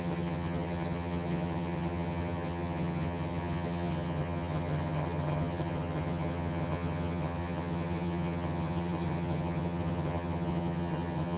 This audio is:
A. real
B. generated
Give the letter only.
B